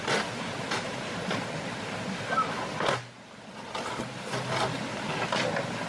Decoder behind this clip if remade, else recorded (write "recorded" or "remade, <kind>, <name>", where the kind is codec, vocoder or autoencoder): recorded